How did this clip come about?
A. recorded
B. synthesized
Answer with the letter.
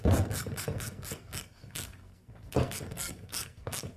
B